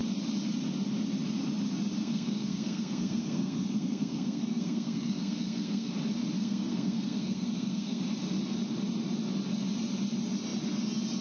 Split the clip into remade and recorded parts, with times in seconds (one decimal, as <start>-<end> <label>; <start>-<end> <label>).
0.0-2.0 recorded; 2.0-5.9 remade; 5.9-6.4 recorded; 6.4-8.0 remade; 8.0-11.2 recorded